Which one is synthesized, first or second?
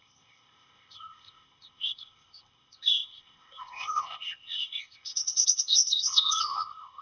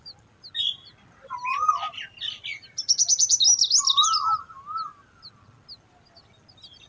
first